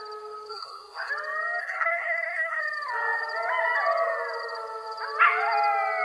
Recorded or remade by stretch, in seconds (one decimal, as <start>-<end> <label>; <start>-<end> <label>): 0.0-0.5 recorded; 0.5-1.1 remade; 1.1-1.6 recorded; 1.6-2.6 remade; 2.6-6.0 recorded